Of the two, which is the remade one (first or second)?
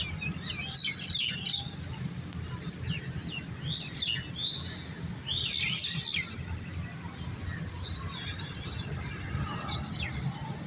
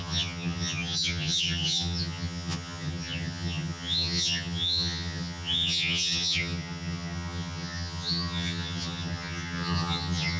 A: second